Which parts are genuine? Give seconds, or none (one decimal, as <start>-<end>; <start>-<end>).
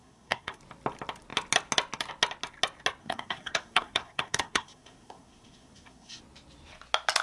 0.6-3.0; 6.2-7.2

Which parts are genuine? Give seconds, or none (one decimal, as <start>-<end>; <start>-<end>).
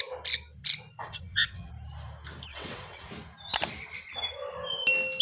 0.0-1.0; 1.7-2.5; 3.1-5.2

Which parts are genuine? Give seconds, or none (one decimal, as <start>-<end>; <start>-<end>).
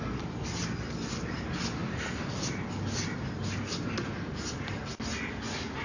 0.0-5.8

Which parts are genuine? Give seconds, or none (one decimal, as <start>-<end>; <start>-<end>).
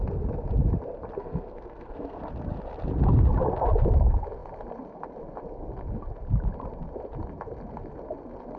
0.0-1.2; 2.2-8.6